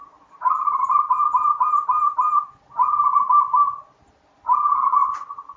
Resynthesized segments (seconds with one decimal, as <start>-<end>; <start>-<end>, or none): none